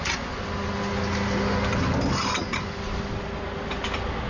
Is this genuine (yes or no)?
yes